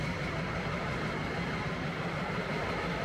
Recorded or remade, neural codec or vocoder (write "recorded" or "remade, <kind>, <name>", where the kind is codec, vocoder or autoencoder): recorded